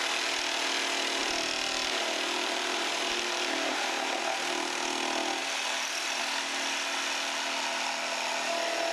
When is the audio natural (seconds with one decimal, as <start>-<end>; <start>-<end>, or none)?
0.0-1.2; 4.2-8.9